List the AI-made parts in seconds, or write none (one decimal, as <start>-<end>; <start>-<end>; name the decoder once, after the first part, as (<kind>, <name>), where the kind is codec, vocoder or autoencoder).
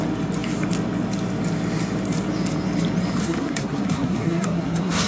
3.2-5.1 (codec, SNAC)